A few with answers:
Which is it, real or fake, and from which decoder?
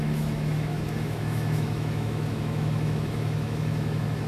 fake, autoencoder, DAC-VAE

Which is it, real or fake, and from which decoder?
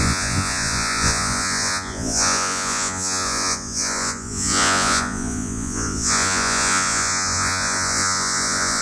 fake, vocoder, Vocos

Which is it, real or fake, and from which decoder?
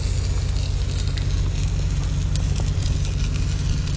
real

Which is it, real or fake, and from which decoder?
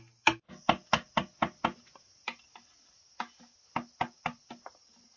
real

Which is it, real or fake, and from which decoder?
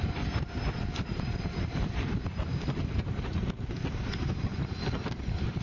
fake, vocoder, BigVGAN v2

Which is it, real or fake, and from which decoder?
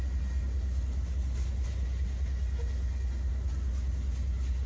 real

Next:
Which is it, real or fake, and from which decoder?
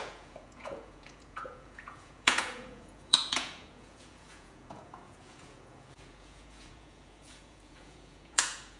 fake, vocoder, Vocos